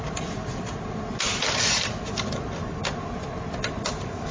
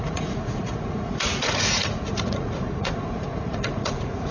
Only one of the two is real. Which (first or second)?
first